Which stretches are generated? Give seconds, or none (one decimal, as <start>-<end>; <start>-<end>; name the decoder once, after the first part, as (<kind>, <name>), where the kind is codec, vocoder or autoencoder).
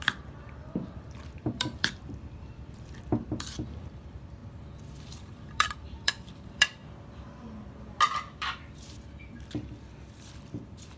0.0-4.4 (vocoder, BigVGAN v2); 5.1-6.8